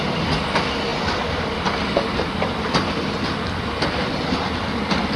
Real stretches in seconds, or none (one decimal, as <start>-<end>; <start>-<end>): 0.0-5.2